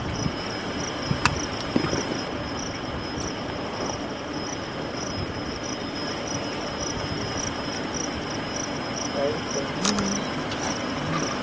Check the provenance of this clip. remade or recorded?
recorded